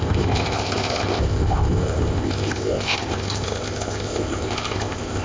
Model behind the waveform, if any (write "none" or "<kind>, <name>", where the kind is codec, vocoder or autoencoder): codec, ZipCodec